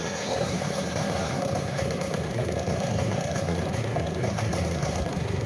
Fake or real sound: fake